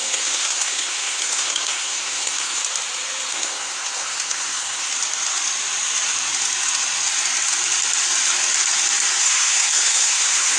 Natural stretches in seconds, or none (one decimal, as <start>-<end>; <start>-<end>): 2.6-3.3; 4.9-9.2